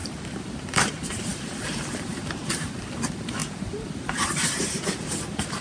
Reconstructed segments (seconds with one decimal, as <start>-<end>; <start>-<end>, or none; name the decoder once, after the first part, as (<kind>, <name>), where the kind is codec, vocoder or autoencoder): 0.0-5.6 (vocoder, BigVGAN v2)